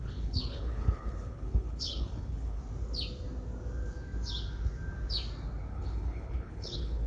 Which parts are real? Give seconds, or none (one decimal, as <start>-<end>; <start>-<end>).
2.6-5.7